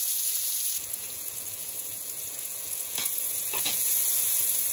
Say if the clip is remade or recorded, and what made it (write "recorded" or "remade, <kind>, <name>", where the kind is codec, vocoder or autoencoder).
remade, vocoder, Vocos